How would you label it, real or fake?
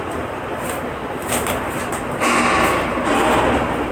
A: fake